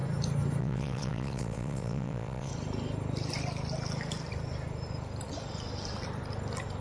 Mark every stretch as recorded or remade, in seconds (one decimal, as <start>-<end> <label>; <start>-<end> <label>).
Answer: 0.0-0.6 recorded; 0.6-2.5 remade; 2.5-6.8 recorded